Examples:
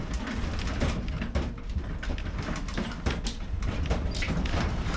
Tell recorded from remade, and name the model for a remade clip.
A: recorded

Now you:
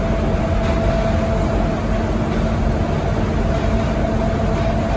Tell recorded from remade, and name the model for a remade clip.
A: recorded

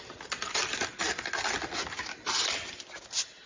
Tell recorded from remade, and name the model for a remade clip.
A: recorded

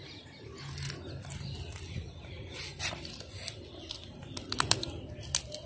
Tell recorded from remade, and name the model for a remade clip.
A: recorded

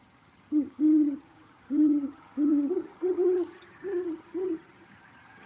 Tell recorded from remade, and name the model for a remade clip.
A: remade, vocoder, HiFi-GAN